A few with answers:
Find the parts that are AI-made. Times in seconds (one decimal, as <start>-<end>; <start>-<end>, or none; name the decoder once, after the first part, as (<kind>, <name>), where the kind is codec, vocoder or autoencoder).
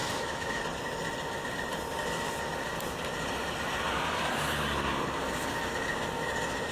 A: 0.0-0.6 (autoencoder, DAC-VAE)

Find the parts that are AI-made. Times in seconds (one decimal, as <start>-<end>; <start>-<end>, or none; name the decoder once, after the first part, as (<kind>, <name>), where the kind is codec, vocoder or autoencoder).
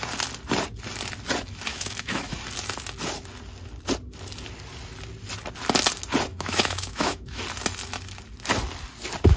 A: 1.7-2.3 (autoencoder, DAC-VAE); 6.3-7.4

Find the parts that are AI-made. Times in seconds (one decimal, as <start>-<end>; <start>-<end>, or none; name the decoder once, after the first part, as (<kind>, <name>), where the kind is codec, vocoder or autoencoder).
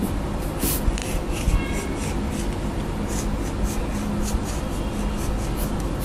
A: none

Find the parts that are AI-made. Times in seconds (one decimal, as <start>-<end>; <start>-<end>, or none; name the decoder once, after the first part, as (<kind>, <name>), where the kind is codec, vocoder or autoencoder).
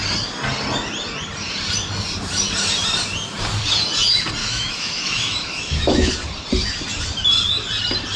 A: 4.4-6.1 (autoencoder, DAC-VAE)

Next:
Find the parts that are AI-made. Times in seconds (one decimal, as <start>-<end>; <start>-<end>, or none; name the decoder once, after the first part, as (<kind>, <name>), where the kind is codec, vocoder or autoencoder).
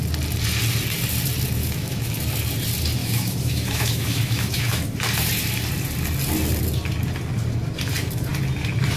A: 1.6-2.2 (autoencoder, DAC-VAE); 3.0-4.8